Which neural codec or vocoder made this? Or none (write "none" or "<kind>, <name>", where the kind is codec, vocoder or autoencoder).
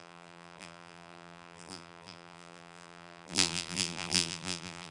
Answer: vocoder, BigVGAN v2